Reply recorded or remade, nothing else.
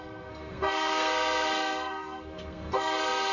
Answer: remade